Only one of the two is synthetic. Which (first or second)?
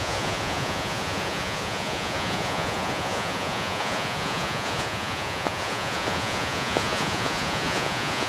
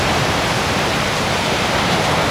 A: first